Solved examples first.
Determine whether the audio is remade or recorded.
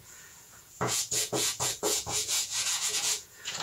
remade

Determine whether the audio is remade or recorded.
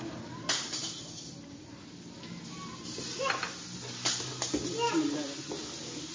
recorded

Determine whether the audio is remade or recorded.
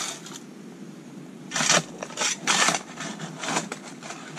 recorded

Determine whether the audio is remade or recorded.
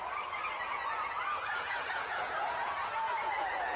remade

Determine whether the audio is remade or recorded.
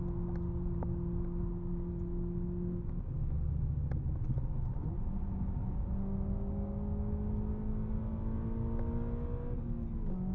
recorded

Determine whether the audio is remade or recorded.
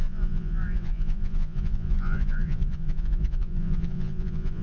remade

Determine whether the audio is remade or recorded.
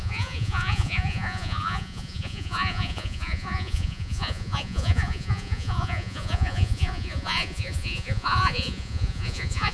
remade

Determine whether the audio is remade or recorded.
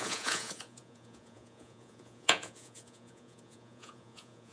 remade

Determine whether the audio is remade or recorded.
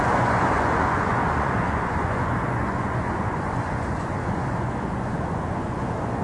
remade